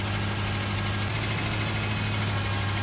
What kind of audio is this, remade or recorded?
recorded